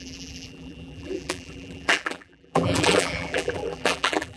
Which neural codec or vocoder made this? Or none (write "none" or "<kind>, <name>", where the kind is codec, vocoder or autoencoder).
vocoder, BigVGAN v2